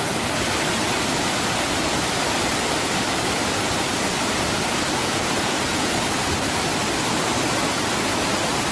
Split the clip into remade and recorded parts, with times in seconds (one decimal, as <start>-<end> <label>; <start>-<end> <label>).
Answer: 0.0-5.0 recorded; 5.0-5.9 remade; 5.9-8.7 recorded